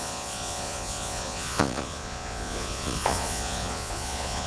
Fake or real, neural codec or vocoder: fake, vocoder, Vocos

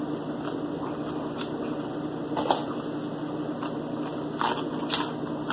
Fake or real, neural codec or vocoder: real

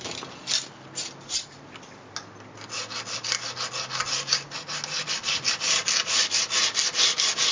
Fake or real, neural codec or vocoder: real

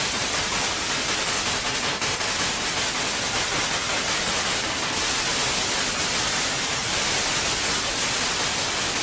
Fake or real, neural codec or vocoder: real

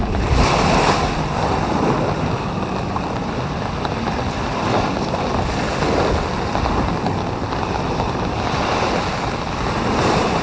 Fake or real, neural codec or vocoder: real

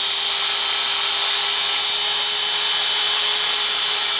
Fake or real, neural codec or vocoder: real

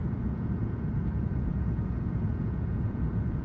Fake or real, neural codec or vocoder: fake, vocoder, Vocos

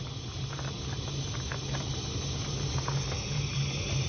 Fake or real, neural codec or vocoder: real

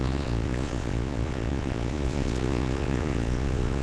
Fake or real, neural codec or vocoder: fake, vocoder, Vocos